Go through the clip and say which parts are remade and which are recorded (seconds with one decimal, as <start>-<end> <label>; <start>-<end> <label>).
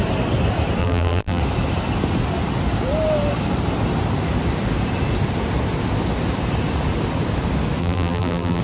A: 0.0-0.8 recorded; 0.8-1.4 remade; 1.4-7.8 recorded; 7.8-8.6 remade